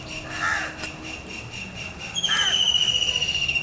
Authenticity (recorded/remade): recorded